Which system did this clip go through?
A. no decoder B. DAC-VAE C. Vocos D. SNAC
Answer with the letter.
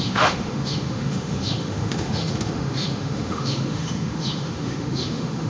B